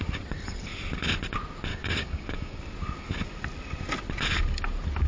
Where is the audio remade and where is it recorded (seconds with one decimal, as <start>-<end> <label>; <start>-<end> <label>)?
0.0-1.7 recorded; 1.7-2.6 remade; 2.6-5.1 recorded

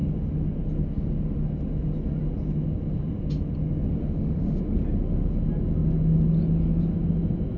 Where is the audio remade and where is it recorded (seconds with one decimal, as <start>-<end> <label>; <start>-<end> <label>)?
0.0-4.0 recorded; 4.0-4.6 remade; 4.6-7.6 recorded

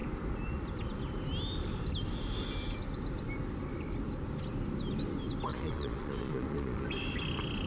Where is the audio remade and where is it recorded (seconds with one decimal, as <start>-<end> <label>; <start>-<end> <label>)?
0.0-5.5 recorded; 5.5-6.9 remade; 6.9-7.7 recorded

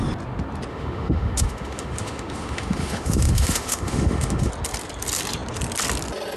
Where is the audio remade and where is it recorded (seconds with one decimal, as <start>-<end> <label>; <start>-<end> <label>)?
0.0-0.7 recorded; 0.7-4.5 remade; 4.5-6.4 recorded